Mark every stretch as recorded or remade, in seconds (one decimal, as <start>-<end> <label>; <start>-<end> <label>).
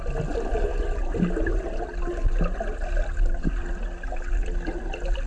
0.0-5.3 recorded